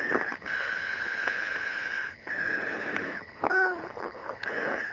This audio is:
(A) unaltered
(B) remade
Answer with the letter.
B